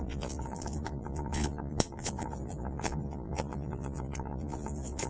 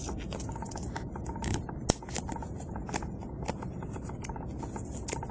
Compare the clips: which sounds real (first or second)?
second